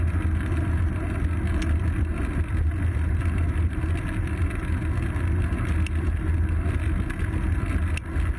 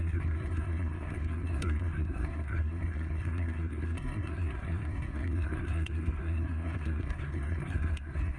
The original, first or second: first